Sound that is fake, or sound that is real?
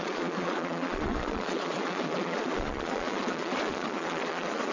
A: fake